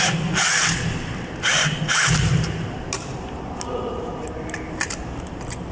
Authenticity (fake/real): real